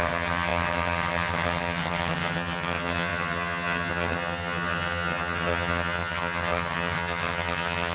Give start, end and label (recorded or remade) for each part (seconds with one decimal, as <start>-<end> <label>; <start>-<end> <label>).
0.0-7.9 remade